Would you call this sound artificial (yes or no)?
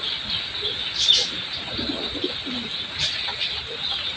no